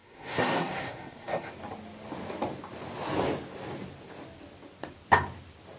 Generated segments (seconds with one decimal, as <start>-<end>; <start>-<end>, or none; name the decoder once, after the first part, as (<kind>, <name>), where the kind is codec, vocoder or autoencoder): 0.0-1.5 (codec, SNAC)